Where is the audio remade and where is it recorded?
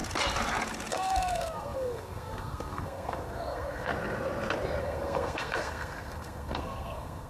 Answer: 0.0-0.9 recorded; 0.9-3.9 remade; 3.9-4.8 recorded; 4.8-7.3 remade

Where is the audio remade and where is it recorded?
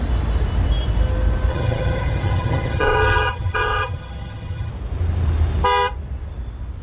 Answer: 0.0-1.5 recorded; 1.5-4.7 remade; 4.7-6.8 recorded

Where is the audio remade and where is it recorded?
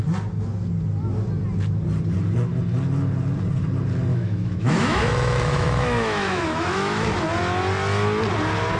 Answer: 0.0-4.1 recorded; 4.1-7.1 remade; 7.1-8.8 recorded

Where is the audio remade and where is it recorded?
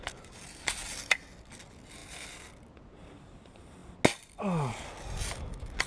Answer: 0.0-5.9 recorded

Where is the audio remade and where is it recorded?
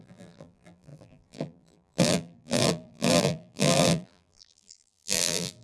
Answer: 0.0-5.6 remade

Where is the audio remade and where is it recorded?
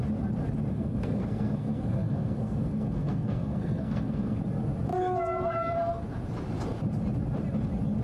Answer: 0.0-0.7 recorded; 0.7-4.4 remade; 4.4-8.0 recorded